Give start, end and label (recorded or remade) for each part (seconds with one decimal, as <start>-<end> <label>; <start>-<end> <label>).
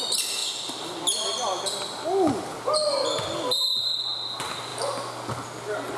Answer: 0.0-6.0 recorded